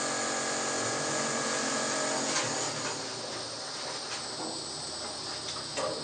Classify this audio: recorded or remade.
recorded